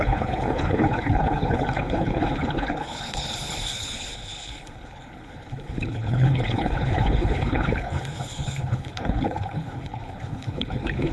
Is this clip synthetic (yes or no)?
yes